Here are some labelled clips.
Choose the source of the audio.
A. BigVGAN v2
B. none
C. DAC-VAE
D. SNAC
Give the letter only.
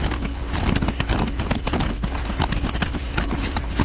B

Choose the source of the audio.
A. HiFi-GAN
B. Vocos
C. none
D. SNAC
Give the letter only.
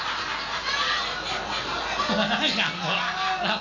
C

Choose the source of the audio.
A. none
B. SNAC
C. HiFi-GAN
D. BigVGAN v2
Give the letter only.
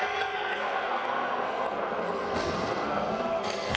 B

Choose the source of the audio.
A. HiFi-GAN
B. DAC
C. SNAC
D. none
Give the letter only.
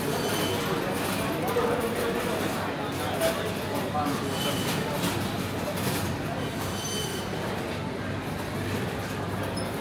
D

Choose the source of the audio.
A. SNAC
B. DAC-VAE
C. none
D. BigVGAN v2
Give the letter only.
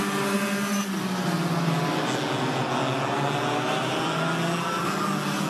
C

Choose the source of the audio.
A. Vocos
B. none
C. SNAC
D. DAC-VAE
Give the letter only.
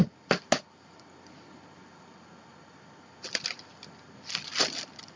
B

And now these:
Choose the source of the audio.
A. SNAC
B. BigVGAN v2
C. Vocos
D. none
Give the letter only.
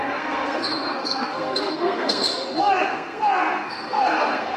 A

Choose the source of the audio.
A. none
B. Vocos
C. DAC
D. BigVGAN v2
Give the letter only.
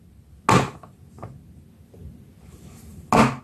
A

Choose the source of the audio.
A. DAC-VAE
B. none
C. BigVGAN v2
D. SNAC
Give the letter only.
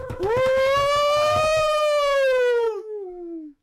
A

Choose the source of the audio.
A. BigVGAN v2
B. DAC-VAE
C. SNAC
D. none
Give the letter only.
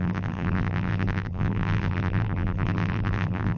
A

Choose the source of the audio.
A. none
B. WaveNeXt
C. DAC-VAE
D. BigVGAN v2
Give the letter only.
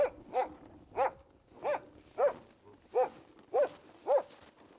A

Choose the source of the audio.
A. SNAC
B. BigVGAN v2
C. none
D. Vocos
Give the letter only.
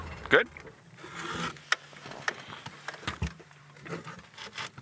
C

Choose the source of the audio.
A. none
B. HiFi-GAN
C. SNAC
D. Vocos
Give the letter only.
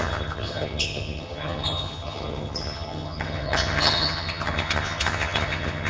B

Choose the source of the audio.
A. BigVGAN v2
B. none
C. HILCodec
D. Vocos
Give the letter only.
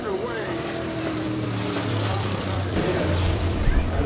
A